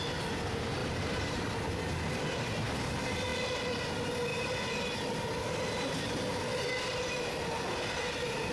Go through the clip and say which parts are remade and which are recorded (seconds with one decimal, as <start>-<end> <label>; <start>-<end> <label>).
0.0-8.5 recorded